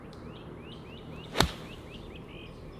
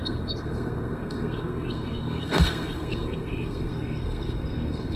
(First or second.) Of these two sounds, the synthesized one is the second